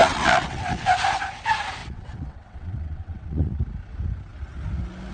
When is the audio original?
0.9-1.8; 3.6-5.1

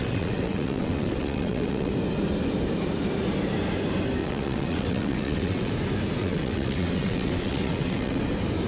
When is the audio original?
1.9-4.2; 5.7-6.2; 8.2-8.7

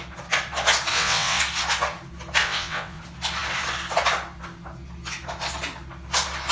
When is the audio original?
0.0-0.9; 1.4-2.4; 3.0-6.5

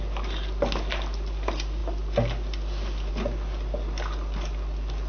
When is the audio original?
0.0-5.1

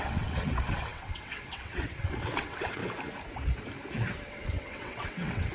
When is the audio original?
2.8-4.2

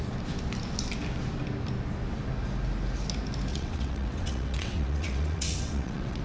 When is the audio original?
0.0-3.5